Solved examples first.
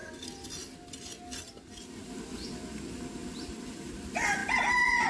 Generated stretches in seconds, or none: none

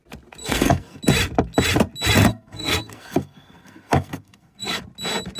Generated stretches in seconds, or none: 0.4-1.0; 2.3-4.8

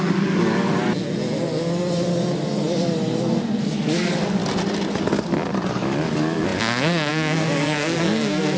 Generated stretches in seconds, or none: 0.0-0.8; 3.6-4.4; 5.7-8.6

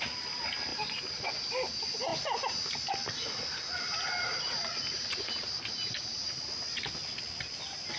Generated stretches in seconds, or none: none